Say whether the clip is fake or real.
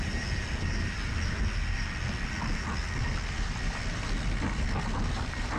real